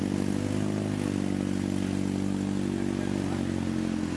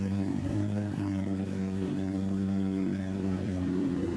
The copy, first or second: second